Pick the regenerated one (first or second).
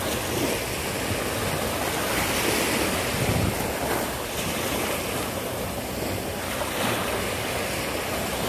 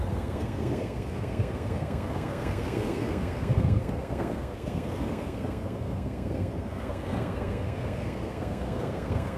second